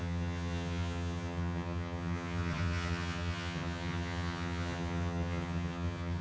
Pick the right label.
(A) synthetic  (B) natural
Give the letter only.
A